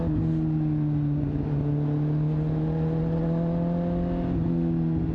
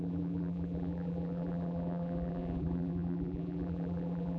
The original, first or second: first